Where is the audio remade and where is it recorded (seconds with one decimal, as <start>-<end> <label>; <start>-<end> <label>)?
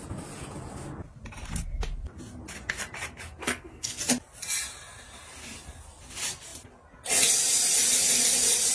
0.0-3.4 recorded; 3.4-4.0 remade; 4.0-8.7 recorded